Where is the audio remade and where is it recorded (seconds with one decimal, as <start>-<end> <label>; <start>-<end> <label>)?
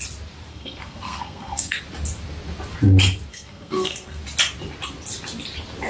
0.0-0.5 recorded; 0.5-1.8 remade; 1.8-3.3 recorded; 3.3-4.2 remade; 4.2-5.9 recorded